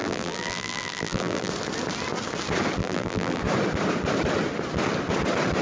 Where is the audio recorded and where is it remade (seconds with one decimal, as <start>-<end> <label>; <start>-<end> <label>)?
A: 0.0-1.5 remade; 1.5-2.8 recorded; 2.8-3.4 remade; 3.4-5.6 recorded